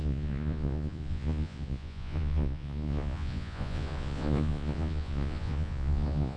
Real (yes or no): no